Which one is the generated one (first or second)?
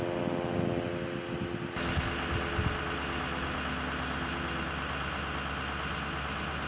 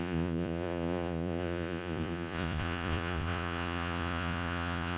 second